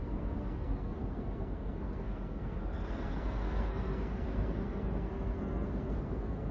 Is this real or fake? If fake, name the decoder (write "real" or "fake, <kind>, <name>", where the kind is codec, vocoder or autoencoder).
fake, codec, SNAC